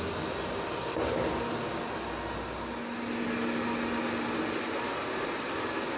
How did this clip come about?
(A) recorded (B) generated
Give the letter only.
A